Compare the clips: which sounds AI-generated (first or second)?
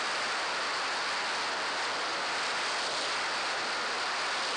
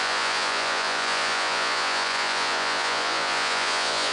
second